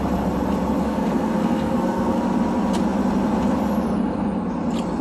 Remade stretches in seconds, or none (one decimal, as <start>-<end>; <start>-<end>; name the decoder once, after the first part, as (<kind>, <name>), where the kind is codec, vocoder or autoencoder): 0.8-2.2 (codec, SNAC)

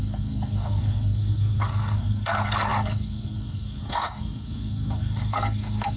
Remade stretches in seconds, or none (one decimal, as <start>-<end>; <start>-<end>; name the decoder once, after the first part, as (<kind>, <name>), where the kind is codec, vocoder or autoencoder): 0.0-6.0 (codec, SNAC)

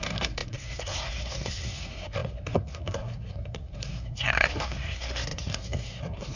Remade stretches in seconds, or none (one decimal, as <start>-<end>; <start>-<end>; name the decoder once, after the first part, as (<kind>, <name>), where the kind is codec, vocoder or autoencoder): 0.0-6.4 (codec, SNAC)

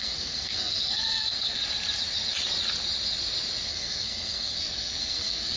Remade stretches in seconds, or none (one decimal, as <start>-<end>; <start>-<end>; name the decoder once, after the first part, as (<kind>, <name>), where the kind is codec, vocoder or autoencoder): 0.0-1.6 (codec, SNAC); 3.7-5.6

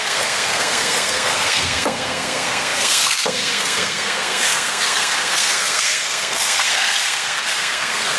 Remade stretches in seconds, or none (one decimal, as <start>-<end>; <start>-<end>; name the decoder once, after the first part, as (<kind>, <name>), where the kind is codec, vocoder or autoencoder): 0.0-8.2 (codec, SNAC)

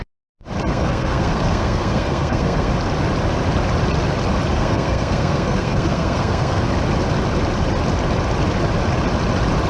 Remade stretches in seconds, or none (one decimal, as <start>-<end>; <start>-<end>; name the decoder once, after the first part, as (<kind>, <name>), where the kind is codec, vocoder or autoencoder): 0.7-2.7 (codec, SNAC); 4.5-6.7

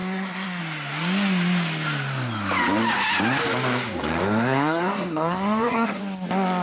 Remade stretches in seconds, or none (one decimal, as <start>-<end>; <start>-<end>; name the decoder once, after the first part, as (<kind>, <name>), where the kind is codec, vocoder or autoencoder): 0.0-0.6 (codec, SNAC); 4.2-6.0